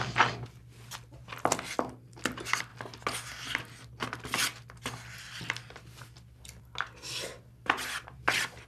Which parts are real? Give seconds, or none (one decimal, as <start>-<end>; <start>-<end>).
0.0-8.7